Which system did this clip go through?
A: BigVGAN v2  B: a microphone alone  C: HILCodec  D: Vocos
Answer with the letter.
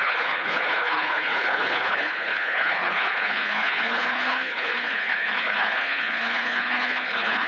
C